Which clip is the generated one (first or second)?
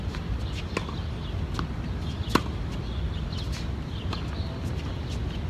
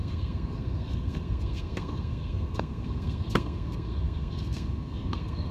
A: second